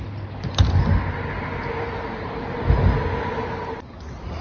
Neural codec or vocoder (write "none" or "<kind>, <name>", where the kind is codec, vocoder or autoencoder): none